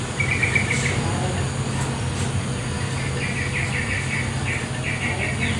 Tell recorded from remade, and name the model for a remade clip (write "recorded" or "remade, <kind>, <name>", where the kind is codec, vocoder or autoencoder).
recorded